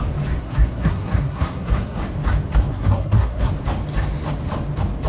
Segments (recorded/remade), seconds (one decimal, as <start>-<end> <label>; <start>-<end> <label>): 0.0-0.4 recorded; 0.4-2.0 remade; 2.0-2.7 recorded; 2.7-3.5 remade; 3.5-5.1 recorded